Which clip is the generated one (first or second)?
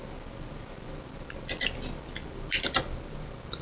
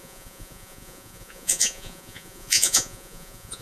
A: second